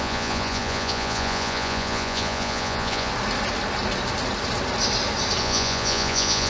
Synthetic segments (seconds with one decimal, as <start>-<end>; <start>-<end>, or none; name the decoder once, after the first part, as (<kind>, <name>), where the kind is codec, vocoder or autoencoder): 0.0-3.1 (vocoder, Vocos); 5.4-6.5